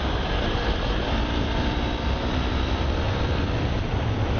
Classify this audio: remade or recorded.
remade